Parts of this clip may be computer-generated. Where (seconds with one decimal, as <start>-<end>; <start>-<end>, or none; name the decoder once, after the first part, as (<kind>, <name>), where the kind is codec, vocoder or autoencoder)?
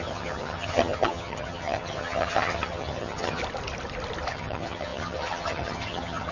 0.0-3.4 (vocoder, HiFi-GAN); 4.3-6.3